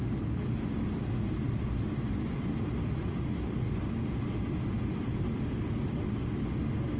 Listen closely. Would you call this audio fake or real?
real